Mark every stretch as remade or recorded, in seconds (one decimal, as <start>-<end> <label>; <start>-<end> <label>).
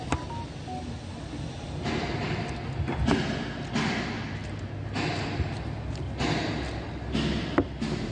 0.0-8.1 recorded